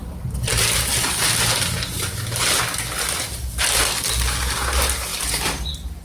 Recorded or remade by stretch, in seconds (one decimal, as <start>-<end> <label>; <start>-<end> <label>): 0.0-6.0 recorded